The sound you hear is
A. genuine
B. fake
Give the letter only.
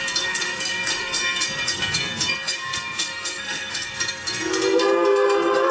B